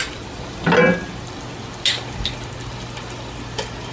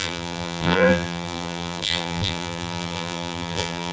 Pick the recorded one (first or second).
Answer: first